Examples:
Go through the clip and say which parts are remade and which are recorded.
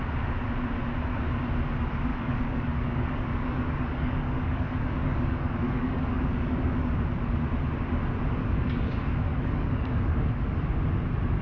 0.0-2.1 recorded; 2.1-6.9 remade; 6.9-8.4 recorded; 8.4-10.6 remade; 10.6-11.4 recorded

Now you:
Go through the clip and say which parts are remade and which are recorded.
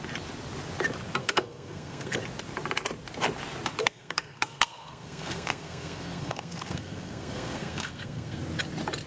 0.0-1.2 recorded; 1.2-2.2 remade; 2.2-3.8 recorded; 3.8-8.4 remade; 8.4-9.1 recorded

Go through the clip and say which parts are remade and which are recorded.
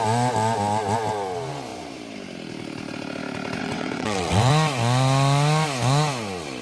0.0-3.6 recorded; 3.6-4.5 remade; 4.5-6.6 recorded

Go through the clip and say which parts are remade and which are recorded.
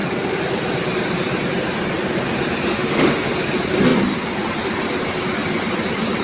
0.0-2.7 recorded; 2.7-3.3 remade; 3.3-6.2 recorded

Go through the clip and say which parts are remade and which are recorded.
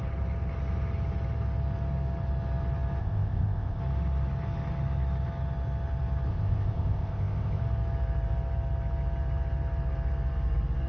0.0-3.0 recorded; 3.0-3.8 remade; 3.8-6.3 recorded; 6.3-7.6 remade; 7.6-10.9 recorded